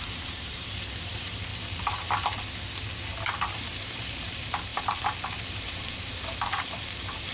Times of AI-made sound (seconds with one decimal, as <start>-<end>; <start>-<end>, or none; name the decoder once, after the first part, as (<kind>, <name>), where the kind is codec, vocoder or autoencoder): 0.0-1.5 (vocoder, BigVGAN v2); 3.5-4.7; 5.2-7.3